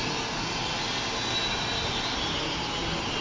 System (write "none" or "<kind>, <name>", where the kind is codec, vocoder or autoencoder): none